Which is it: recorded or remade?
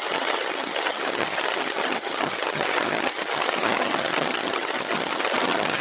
remade